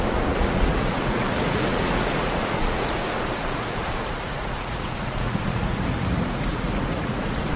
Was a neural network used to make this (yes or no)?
yes